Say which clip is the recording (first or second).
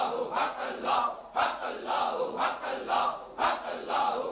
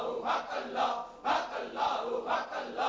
second